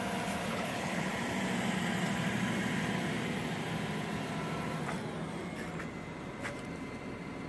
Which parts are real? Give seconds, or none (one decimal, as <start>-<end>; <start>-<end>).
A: 0.0-0.5; 1.1-7.5